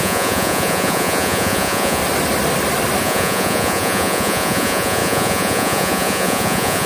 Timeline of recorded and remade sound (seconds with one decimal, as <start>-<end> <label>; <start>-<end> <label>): 0.0-2.0 remade; 2.0-3.0 recorded; 3.0-6.9 remade